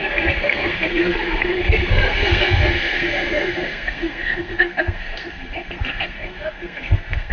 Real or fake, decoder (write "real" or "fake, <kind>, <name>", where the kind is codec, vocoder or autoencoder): fake, codec, SNAC